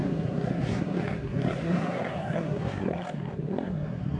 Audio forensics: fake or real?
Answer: fake